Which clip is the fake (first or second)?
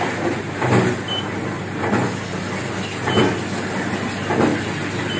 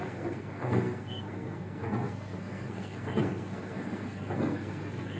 second